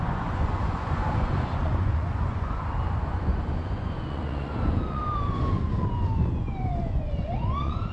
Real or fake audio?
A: fake